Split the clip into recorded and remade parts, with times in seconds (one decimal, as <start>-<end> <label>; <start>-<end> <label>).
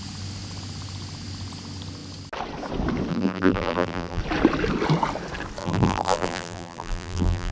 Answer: 0.0-3.1 recorded; 3.1-4.2 remade; 4.2-5.6 recorded; 5.6-7.5 remade